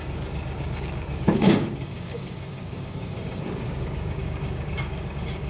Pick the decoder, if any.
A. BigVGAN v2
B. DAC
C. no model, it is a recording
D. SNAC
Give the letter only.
B